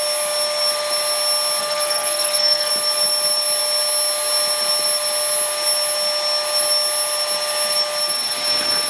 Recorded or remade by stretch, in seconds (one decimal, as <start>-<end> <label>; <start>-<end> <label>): 0.0-1.6 recorded; 1.6-2.7 remade; 2.7-8.9 recorded